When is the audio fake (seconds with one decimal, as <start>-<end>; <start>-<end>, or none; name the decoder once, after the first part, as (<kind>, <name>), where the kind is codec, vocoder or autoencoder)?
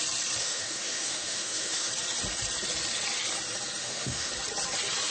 0.4-1.9 (autoencoder, DAC-VAE); 3.8-4.3